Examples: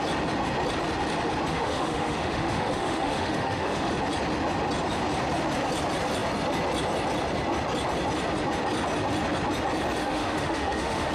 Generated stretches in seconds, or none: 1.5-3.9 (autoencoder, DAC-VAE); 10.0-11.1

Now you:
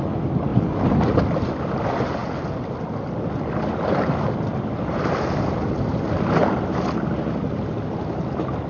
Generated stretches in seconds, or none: none

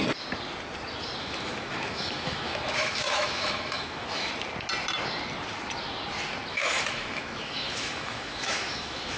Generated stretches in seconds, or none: 1.2-4.3 (autoencoder, DAC-VAE); 6.5-9.2

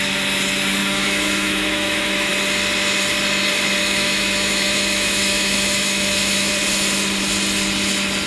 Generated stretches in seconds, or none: 0.8-2.3 (autoencoder, DAC-VAE); 3.8-6.5

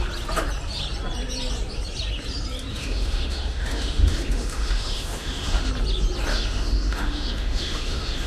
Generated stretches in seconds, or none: 2.7-5.7 (autoencoder, DAC-VAE); 6.3-8.3

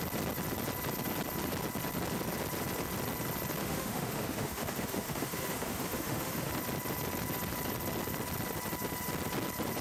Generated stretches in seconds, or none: 3.6-6.5 (autoencoder, DAC-VAE)